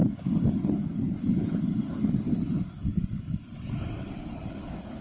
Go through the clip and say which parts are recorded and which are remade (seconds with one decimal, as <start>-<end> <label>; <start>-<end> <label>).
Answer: 0.0-5.0 recorded